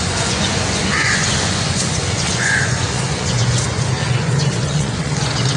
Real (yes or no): no